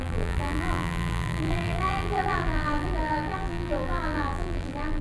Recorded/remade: remade